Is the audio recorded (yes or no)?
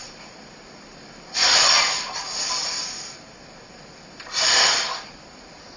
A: no